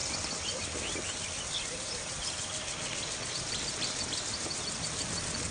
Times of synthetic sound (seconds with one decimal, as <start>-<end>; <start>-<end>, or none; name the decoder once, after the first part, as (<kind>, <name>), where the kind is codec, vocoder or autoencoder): none